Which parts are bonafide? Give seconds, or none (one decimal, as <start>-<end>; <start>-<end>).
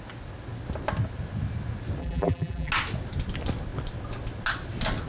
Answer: 0.0-2.0; 2.7-5.1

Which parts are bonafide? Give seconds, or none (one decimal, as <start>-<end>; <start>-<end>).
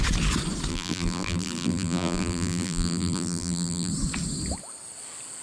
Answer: 0.0-0.7; 3.9-5.4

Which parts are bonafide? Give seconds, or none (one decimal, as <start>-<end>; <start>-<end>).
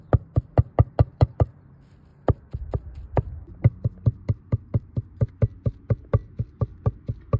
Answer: 0.0-1.1; 1.7-2.1; 5.3-7.4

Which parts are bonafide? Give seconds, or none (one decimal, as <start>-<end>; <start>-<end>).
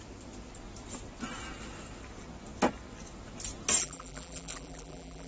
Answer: 0.0-3.8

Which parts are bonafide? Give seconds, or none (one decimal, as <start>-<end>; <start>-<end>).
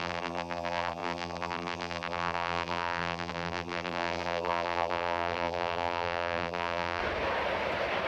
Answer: 7.0-8.1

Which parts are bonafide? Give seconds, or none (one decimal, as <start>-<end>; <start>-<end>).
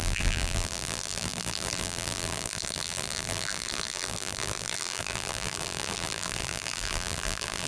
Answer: none